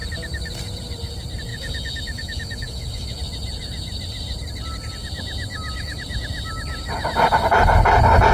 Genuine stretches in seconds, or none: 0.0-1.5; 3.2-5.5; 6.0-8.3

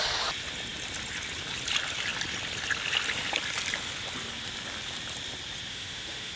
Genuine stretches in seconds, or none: 0.0-5.7

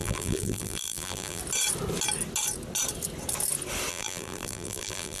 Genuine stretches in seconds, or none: 1.4-3.9

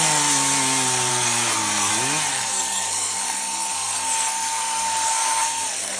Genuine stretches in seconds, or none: 0.0-1.1; 1.9-2.3